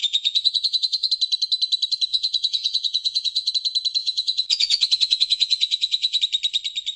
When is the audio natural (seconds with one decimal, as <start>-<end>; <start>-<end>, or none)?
1.1-2.1; 3.5-4.0; 6.2-7.0

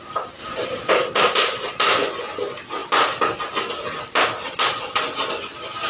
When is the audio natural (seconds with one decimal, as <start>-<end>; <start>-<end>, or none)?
0.0-0.4; 0.9-5.9

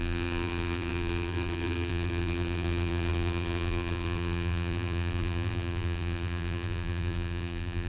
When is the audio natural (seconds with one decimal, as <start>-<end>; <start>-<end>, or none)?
none